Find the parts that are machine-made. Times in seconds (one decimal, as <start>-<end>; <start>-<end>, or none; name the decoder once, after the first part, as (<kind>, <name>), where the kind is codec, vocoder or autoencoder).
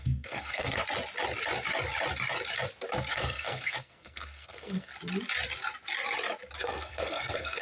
0.0-0.8 (codec, SNAC); 3.1-4.9; 6.6-7.6